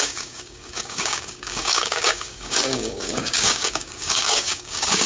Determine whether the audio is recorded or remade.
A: remade